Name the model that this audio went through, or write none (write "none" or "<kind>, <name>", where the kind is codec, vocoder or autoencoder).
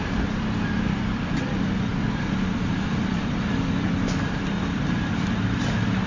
vocoder, BigVGAN v2